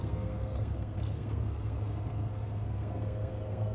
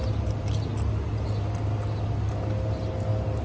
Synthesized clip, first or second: first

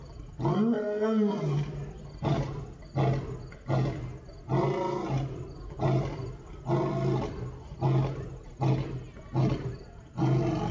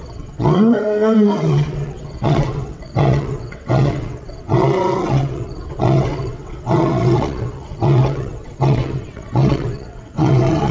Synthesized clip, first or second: second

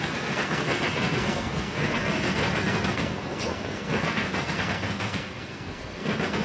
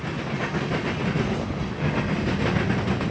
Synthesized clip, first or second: first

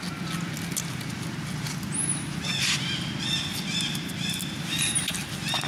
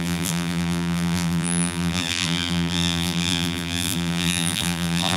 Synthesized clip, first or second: second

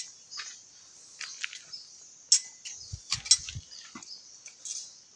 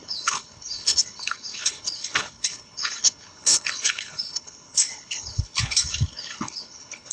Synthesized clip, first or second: second